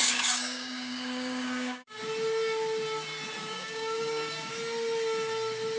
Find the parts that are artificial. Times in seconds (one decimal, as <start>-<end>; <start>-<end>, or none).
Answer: 0.0-2.0; 3.4-4.5